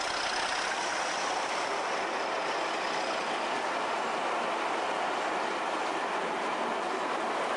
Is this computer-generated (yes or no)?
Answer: no